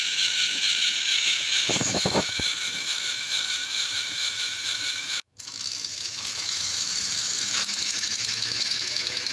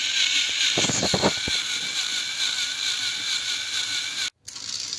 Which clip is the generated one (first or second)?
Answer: first